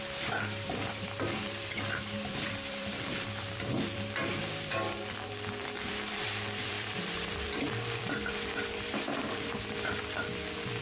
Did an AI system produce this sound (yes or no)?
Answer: yes